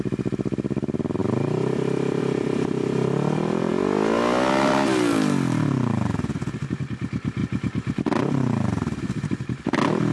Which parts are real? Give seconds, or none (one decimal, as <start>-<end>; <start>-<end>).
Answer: 0.0-10.1